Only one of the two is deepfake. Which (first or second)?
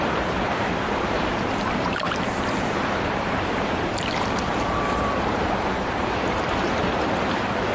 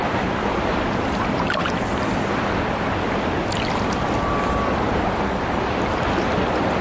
first